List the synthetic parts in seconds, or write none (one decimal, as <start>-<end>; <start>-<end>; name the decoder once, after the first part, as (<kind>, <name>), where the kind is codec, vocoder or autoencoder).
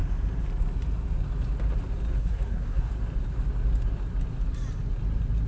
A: 2.2-2.9 (codec, SNAC)